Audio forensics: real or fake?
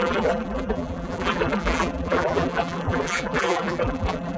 fake